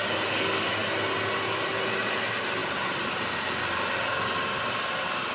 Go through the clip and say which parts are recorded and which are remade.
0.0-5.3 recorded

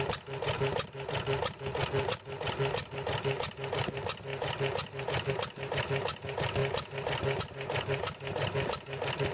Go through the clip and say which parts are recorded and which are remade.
0.0-9.3 recorded

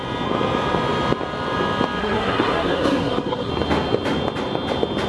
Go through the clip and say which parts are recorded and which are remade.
0.0-2.0 recorded; 2.0-3.5 remade; 3.5-5.1 recorded

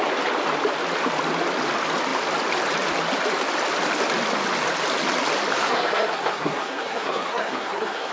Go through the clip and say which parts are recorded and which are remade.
0.0-5.6 recorded; 5.6-8.1 remade

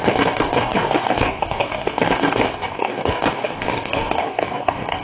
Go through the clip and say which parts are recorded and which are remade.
0.0-5.0 remade

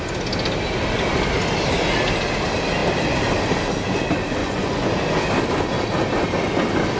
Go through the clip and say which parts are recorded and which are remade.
0.0-4.4 recorded; 4.4-4.9 remade; 4.9-7.0 recorded

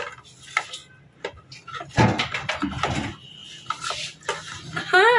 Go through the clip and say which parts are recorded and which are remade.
0.0-5.2 recorded